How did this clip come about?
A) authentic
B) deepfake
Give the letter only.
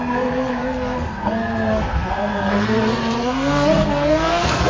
B